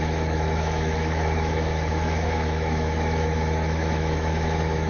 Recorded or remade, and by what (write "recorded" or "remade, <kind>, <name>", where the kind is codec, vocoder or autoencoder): remade, autoencoder, DAC-VAE